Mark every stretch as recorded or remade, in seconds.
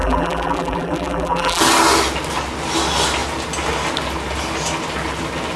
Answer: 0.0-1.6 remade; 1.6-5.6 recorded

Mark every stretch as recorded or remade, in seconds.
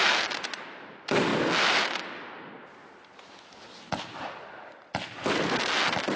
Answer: 0.0-6.2 recorded